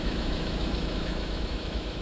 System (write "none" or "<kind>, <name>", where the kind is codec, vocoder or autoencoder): autoencoder, DAC-VAE